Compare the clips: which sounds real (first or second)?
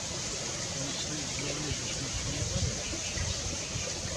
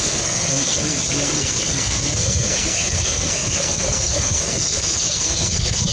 first